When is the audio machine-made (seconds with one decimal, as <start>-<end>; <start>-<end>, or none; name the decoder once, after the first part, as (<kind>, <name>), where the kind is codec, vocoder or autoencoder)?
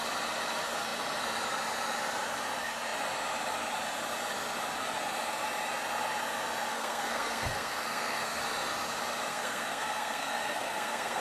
6.7-8.4 (codec, SNAC); 9.3-11.2